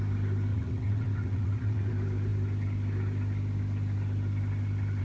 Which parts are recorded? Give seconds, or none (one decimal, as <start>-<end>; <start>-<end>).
0.0-0.5; 1.9-5.0